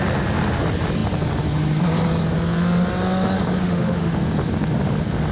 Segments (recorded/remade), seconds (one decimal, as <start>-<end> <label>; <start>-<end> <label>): 0.0-3.6 recorded; 3.6-4.2 remade; 4.2-5.3 recorded